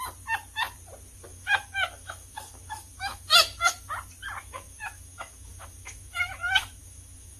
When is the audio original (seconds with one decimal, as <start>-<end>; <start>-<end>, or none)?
0.0-1.3; 3.9-4.4